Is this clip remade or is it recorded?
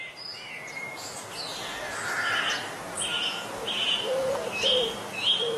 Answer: recorded